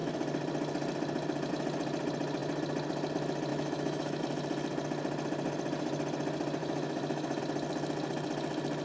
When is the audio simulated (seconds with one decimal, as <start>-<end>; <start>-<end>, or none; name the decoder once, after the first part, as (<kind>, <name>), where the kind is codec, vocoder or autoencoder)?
3.5-4.2 (autoencoder, DAC-VAE); 6.6-7.4